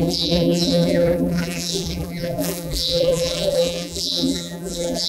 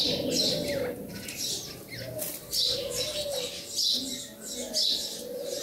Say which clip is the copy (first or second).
first